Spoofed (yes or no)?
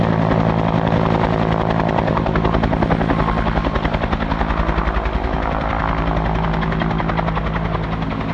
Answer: no